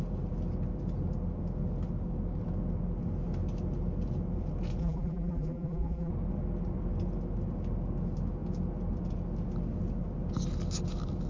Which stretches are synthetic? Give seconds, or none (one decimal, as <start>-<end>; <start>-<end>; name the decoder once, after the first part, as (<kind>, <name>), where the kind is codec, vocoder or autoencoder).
4.8-6.1 (vocoder, BigVGAN v2)